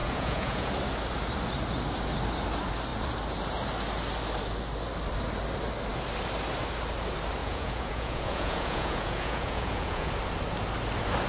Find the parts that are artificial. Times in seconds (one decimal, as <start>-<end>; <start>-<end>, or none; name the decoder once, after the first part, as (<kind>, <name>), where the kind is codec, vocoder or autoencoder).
0.0-0.7 (vocoder, Vocos); 7.4-10.1